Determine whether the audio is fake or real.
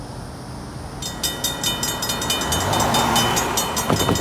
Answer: real